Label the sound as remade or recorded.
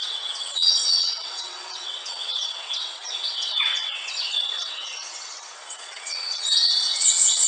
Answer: remade